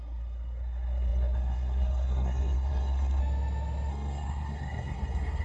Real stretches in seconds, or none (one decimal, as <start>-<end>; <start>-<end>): 3.2-3.9